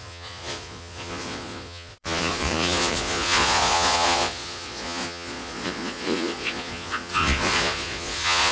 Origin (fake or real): fake